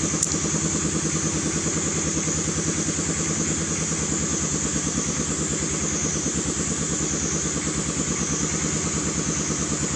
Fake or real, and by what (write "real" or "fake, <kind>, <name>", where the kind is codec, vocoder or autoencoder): real